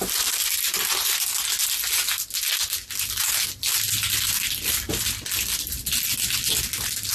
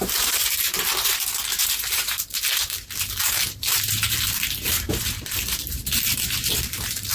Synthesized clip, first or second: second